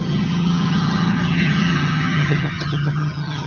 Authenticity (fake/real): fake